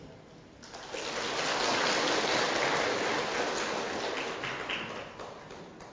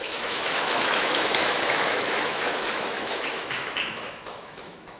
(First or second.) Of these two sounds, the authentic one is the first